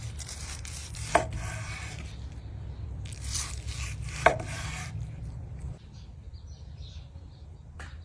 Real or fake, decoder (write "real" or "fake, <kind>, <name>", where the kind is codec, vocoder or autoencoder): fake, vocoder, BigVGAN v2